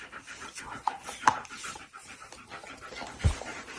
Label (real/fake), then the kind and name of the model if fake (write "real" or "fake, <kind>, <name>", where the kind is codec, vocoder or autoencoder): real